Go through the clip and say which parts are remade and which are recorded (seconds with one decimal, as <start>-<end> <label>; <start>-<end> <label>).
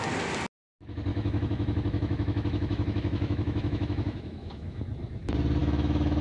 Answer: 0.0-1.1 recorded; 1.1-4.8 remade; 4.8-5.6 recorded; 5.6-6.2 remade